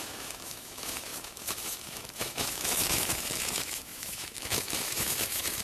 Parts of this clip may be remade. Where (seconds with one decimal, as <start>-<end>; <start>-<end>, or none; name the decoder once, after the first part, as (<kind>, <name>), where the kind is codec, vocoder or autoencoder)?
0.0-5.6 (autoencoder, DAC-VAE)